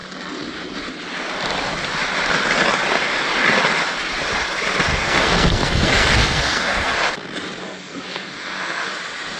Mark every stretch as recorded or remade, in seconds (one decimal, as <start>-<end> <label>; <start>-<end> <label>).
0.0-4.9 recorded; 4.9-7.1 remade; 7.1-7.6 recorded; 7.6-8.9 remade; 8.9-9.4 recorded